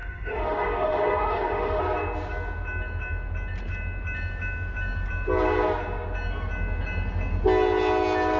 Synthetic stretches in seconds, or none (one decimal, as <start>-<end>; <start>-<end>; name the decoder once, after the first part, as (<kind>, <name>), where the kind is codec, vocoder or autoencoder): 0.0-1.8 (autoencoder, DAC-VAE)